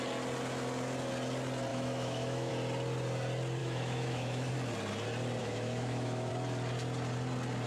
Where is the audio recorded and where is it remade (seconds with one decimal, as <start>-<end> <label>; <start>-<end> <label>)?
0.0-1.7 recorded; 1.7-2.5 remade; 2.5-3.6 recorded; 3.6-4.5 remade; 4.5-5.4 recorded; 5.4-6.3 remade; 6.3-7.7 recorded